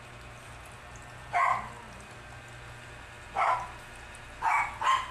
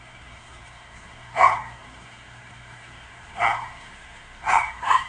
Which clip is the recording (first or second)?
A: first